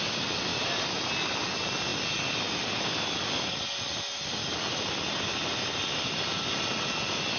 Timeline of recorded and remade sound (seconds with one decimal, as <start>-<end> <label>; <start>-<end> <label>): 0.0-7.4 recorded

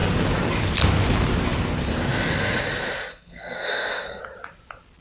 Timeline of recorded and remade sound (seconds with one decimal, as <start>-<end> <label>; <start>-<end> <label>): 0.0-3.1 recorded; 3.1-4.2 remade; 4.2-5.0 recorded

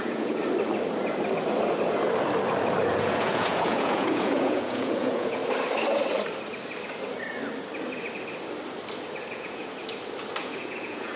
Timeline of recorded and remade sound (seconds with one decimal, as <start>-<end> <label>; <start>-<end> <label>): 0.0-0.4 remade; 0.4-2.9 recorded; 2.9-5.4 remade; 5.4-9.3 recorded; 9.3-9.8 remade; 9.8-10.4 recorded; 10.4-11.2 remade

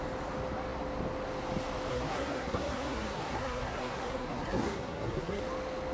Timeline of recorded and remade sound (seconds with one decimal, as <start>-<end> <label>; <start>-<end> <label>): 0.0-1.9 recorded; 1.9-5.4 remade; 5.4-5.9 recorded

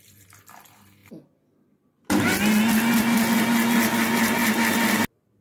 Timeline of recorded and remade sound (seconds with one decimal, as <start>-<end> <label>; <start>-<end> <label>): 0.0-5.4 recorded

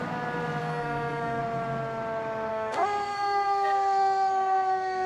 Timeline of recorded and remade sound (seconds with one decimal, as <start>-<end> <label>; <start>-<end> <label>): 0.0-0.6 recorded; 0.6-1.4 remade; 1.4-2.5 recorded; 2.5-5.1 remade

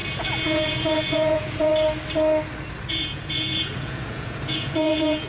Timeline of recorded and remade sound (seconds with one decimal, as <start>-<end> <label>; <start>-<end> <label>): 0.0-1.7 remade; 1.7-2.9 recorded; 2.9-5.3 remade